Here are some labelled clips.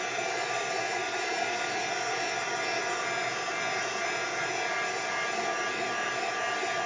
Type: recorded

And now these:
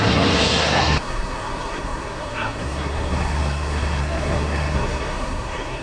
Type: remade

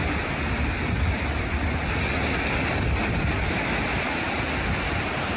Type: recorded